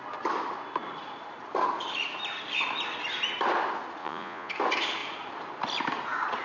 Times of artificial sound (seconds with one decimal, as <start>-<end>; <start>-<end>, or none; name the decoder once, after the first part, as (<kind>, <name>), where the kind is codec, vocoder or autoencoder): 4.0-4.5 (vocoder, Vocos)